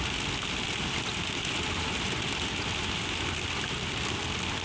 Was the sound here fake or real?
real